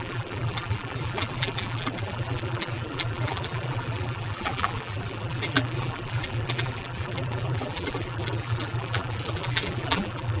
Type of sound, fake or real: fake